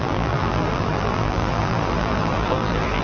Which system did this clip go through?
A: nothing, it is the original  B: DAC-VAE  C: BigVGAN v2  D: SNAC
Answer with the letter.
C